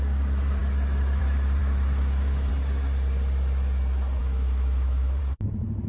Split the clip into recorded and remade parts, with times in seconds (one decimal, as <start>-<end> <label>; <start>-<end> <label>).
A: 0.0-1.6 recorded; 1.6-2.5 remade; 2.5-4.2 recorded; 4.2-5.2 remade; 5.2-5.9 recorded